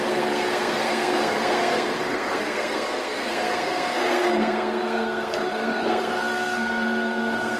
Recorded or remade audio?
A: remade